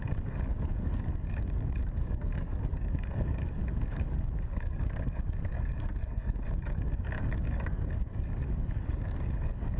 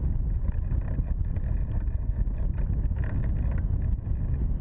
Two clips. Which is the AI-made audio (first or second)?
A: first